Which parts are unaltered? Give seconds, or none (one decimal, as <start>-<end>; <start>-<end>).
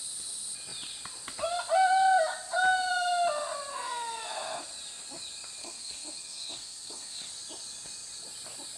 0.0-3.7; 4.6-5.6; 7.3-8.8